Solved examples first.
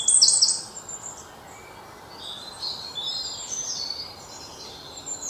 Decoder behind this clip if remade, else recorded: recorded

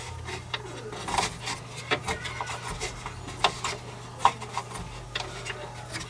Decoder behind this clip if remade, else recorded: recorded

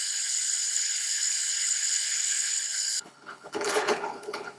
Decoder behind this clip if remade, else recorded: remade, codec, HILCodec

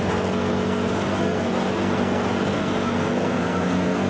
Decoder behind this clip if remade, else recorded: remade, codec, SNAC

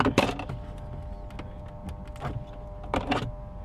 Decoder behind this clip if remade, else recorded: recorded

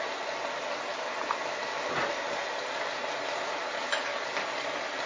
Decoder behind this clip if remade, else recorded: recorded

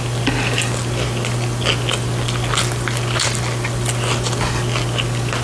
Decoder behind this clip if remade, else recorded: recorded